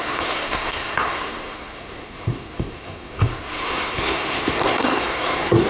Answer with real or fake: fake